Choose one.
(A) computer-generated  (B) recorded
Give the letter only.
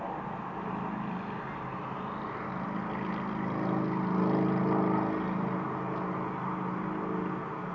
B